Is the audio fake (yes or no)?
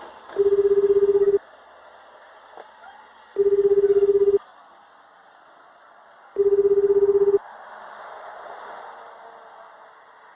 no